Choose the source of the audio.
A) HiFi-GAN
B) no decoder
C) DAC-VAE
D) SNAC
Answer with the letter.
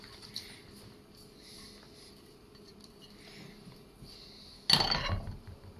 B